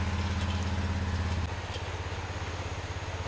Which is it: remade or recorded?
recorded